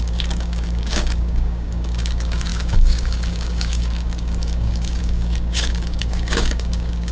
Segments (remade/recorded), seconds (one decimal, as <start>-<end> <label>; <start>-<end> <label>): 0.0-7.1 remade